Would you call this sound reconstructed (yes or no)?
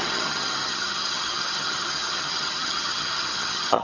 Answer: yes